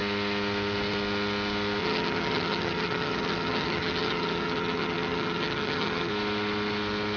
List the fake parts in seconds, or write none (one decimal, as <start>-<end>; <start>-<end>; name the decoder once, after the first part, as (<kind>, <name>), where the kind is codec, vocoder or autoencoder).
1.8-6.1 (vocoder, HiFi-GAN)